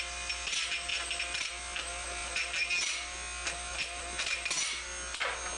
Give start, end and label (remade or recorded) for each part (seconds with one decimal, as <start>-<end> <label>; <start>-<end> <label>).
0.0-5.6 recorded